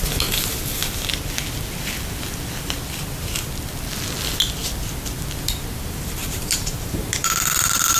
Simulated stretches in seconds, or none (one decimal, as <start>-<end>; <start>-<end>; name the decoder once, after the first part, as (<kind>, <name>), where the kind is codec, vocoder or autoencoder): 6.2-8.0 (vocoder, BigVGAN v2)